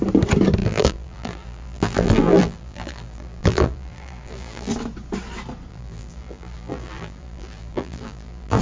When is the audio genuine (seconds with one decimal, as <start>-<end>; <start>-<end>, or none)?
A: 0.0-0.6; 4.7-5.7